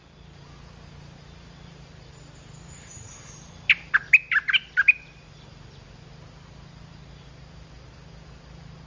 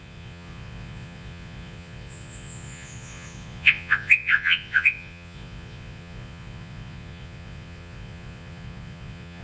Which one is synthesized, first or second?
second